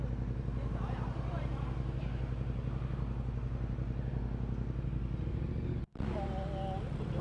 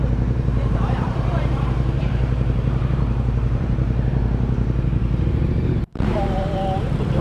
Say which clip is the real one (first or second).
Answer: first